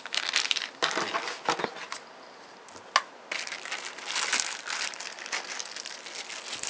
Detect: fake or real real